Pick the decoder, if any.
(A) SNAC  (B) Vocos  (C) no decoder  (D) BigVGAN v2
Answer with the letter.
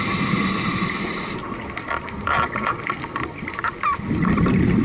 C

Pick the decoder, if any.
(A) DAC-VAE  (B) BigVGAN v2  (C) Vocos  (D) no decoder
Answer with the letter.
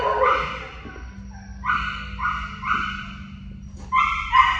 D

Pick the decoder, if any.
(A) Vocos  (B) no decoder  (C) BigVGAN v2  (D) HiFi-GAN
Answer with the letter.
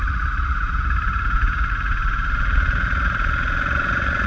A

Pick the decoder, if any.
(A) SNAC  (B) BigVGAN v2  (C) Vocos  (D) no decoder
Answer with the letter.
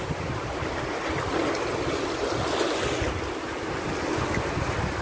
D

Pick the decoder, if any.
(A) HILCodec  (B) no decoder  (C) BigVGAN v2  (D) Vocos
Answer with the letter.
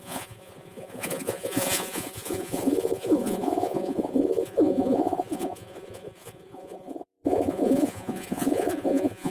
D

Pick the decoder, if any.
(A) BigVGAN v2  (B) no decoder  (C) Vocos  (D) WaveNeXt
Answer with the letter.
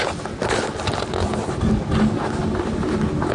B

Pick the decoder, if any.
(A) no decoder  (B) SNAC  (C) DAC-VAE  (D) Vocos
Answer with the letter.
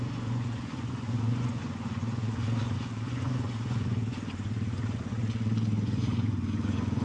D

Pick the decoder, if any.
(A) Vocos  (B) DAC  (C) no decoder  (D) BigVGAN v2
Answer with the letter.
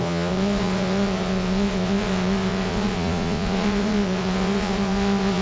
A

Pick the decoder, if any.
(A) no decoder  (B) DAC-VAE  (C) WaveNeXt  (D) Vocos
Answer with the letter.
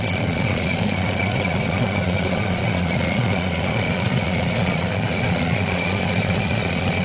D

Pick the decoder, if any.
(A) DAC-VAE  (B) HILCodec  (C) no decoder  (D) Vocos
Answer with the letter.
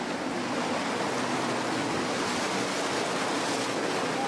C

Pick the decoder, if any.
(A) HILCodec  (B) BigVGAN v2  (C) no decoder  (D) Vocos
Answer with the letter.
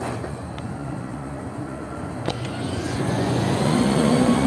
D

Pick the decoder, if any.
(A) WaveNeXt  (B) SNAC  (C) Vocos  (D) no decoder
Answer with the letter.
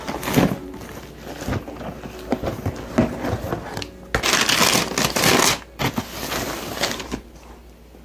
D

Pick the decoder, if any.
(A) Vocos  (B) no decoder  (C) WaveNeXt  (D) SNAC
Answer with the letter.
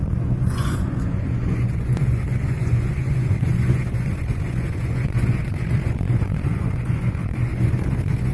A